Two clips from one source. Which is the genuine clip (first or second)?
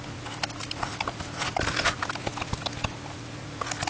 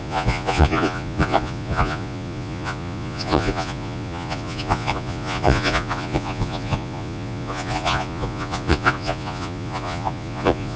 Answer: first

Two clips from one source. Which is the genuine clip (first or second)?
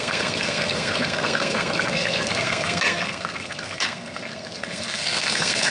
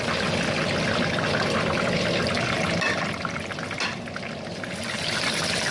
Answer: second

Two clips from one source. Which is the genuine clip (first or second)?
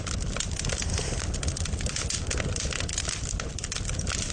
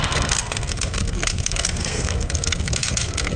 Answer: first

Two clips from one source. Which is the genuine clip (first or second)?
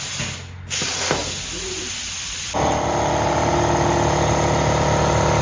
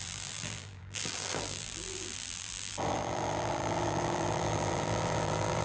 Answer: first